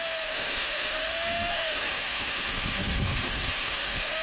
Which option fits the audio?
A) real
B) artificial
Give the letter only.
B